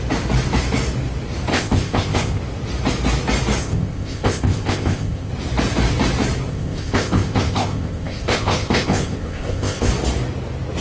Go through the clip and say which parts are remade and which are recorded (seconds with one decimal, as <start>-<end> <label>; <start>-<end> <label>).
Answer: 0.0-1.5 recorded; 1.5-2.4 remade; 2.4-3.6 recorded; 3.6-5.3 remade; 5.3-6.5 recorded; 6.5-9.9 remade; 9.9-10.8 recorded